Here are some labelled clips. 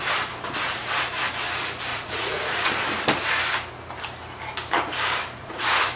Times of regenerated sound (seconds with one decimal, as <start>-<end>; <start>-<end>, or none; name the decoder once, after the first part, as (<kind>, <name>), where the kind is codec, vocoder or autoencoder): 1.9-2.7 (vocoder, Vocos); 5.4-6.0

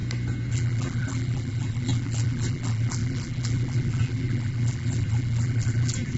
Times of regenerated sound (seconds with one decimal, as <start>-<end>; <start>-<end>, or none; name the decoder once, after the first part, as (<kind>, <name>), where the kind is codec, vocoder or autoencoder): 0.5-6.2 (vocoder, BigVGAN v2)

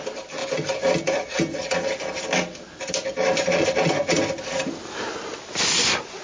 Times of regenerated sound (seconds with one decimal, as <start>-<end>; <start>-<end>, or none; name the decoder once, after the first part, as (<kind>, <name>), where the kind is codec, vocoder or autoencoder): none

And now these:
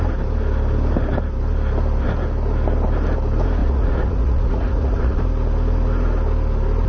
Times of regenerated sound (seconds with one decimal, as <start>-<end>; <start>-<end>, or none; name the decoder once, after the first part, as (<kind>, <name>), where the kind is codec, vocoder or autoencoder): 3.6-5.2 (vocoder, Vocos)

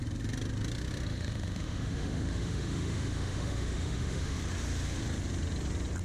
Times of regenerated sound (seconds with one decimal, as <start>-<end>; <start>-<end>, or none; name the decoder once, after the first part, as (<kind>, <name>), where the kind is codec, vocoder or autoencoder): 1.1-4.4 (autoencoder, DAC-VAE)

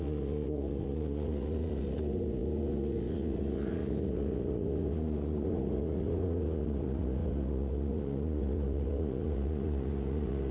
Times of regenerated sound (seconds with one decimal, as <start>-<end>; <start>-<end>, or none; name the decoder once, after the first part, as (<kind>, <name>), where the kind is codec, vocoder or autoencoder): 0.0-10.5 (vocoder, Vocos)

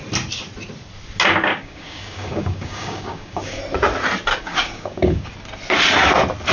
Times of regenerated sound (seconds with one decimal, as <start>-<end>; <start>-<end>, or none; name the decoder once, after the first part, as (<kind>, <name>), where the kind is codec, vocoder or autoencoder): 1.5-3.6 (codec, DAC); 4.3-5.3

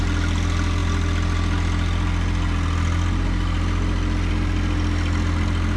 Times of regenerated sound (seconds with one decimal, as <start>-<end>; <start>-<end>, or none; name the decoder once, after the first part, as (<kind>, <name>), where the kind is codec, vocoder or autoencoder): none